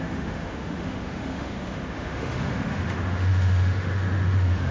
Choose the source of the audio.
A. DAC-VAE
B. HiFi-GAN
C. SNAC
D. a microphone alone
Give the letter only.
A